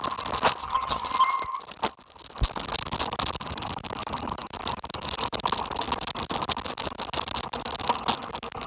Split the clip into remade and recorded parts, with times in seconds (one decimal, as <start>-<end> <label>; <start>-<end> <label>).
0.0-0.6 recorded; 0.6-1.1 remade; 1.1-8.7 recorded